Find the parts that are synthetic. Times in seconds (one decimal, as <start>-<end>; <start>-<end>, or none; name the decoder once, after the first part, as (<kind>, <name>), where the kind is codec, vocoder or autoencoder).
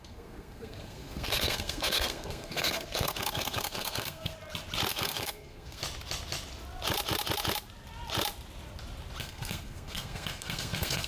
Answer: 0.0-4.3 (codec, SNAC); 4.9-5.8; 9.2-11.1